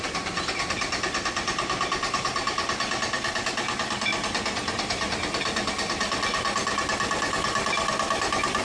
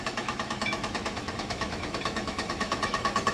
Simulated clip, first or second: second